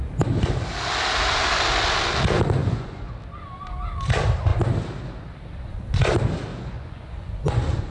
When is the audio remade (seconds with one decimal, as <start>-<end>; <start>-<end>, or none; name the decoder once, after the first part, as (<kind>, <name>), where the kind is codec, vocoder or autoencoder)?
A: 2.6-3.1 (vocoder, Vocos); 6.5-7.9